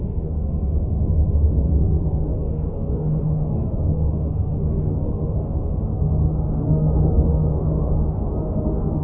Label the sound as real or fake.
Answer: fake